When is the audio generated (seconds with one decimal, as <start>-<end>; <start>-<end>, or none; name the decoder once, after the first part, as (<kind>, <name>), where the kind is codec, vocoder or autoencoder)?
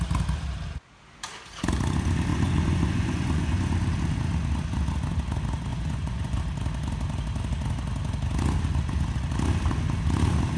2.3-3.7 (vocoder, Vocos); 5.7-6.4